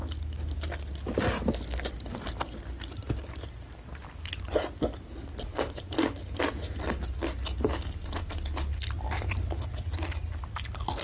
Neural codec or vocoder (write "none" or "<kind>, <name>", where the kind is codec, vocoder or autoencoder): none